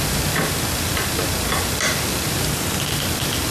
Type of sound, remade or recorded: recorded